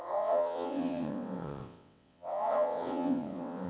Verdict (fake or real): fake